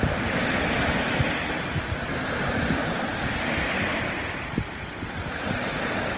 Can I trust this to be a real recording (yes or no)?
yes